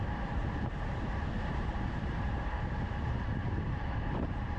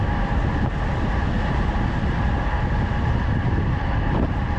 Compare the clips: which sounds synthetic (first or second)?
first